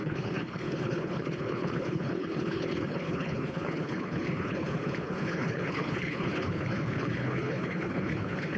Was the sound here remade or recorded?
remade